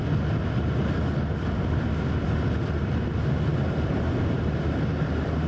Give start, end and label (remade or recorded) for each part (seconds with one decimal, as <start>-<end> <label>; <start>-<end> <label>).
0.0-3.5 recorded; 3.5-4.7 remade; 4.7-5.5 recorded